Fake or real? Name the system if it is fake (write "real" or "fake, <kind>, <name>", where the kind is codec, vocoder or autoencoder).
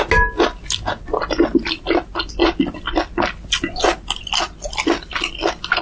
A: real